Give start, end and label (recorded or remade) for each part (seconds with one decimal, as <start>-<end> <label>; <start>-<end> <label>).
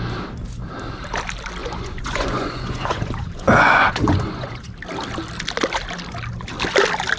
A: 0.0-1.6 recorded; 1.6-4.7 remade; 4.7-7.2 recorded